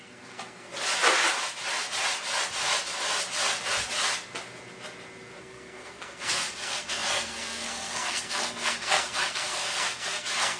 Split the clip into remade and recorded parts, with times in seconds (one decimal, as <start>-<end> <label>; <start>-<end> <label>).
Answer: 0.0-0.7 remade; 0.7-5.4 recorded; 5.4-10.6 remade